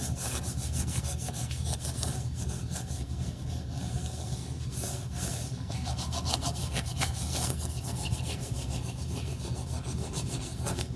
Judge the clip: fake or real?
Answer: fake